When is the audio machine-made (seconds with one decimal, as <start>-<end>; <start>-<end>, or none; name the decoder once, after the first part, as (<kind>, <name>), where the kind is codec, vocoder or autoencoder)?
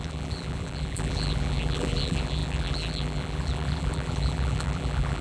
0.0-5.2 (vocoder, BigVGAN v2)